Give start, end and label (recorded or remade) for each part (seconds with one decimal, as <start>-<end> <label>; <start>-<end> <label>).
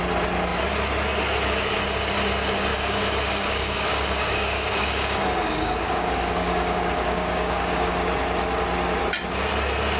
0.0-2.7 recorded; 2.7-7.9 remade; 7.9-10.0 recorded